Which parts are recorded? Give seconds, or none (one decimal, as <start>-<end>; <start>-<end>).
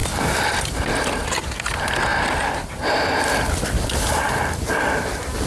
0.0-5.5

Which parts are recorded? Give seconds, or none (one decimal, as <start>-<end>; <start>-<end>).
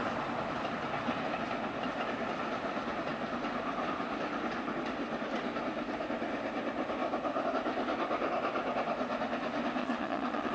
0.0-9.8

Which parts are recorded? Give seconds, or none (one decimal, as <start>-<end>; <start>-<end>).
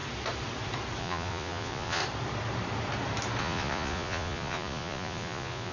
0.0-1.0; 2.0-3.4